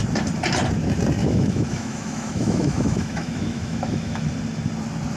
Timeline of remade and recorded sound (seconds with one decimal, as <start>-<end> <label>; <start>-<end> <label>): 0.0-1.2 recorded; 1.2-4.3 remade; 4.3-5.2 recorded